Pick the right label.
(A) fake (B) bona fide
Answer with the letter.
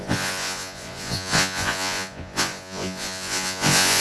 A